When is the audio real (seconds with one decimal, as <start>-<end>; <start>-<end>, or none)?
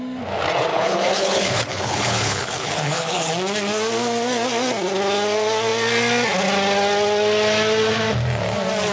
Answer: 0.0-0.7; 3.3-8.9